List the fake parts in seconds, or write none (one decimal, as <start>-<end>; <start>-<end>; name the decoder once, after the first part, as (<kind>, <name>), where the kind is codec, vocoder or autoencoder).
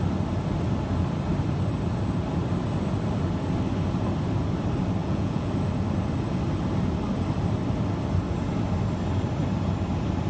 5.0-5.5 (vocoder, Vocos)